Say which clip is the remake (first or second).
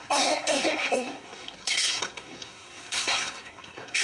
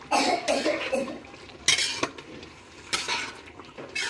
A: first